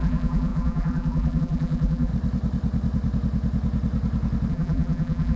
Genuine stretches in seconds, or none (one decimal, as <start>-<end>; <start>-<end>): 2.1-4.5